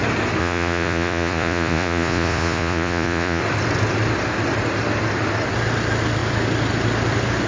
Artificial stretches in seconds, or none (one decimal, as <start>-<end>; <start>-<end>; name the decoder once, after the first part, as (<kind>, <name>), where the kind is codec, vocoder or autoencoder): 0.4-3.4 (vocoder, Vocos)